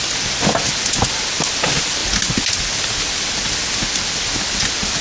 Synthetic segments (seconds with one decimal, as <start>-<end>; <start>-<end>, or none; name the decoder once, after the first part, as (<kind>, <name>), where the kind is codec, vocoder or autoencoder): none